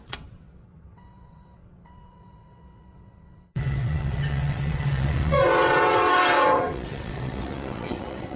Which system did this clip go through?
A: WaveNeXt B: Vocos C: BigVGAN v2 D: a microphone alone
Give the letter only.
A